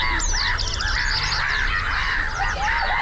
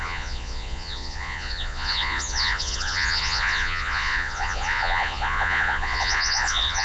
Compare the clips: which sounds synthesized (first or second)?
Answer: second